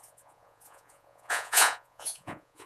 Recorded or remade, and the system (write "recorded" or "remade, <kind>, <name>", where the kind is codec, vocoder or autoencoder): remade, vocoder, Vocos